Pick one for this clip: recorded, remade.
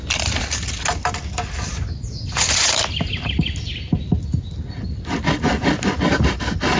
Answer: recorded